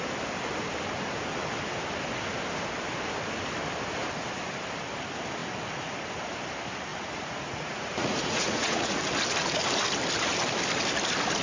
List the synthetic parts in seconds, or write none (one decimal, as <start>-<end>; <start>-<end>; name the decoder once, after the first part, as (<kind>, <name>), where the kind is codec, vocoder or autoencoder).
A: 6.9-9.0 (vocoder, Vocos)